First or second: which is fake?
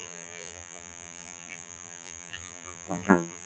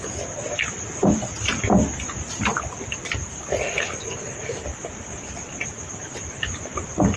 first